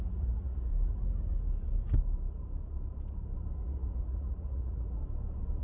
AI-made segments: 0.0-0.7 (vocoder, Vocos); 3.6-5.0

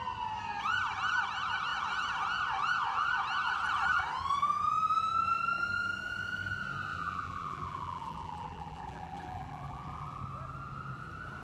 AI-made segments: 6.9-10.2 (vocoder, BigVGAN v2)

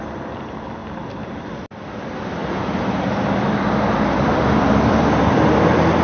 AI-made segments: 0.8-1.8 (vocoder, BigVGAN v2); 2.4-6.0